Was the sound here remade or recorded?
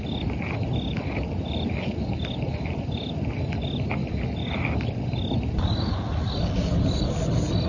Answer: recorded